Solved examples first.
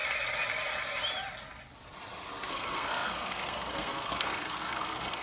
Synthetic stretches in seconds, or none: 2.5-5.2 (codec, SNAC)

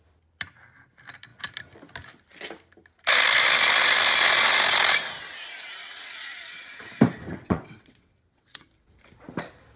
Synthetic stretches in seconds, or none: 5.8-6.8 (vocoder, WaveNeXt); 7.3-8.7

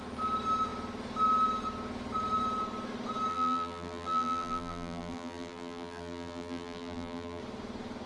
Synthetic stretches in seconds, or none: 3.3-7.4 (vocoder, BigVGAN v2)

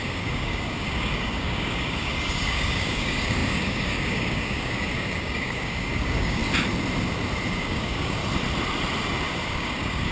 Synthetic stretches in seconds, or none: 0.0-6.4 (codec, DAC); 7.5-8.2; 9.5-10.1

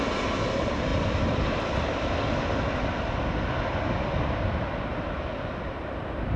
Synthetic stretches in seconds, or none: 0.9-2.4 (vocoder, BigVGAN v2); 4.9-6.0

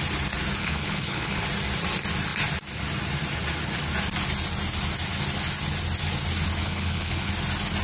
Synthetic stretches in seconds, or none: 0.6-1.4 (codec, HILCodec); 6.6-7.3

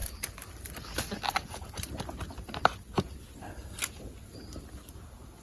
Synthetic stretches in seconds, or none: none

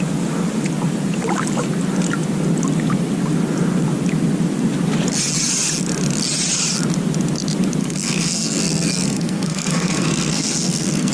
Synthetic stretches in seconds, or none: 7.8-11.1 (codec, SNAC)